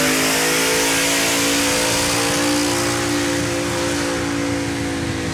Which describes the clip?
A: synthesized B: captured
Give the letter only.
B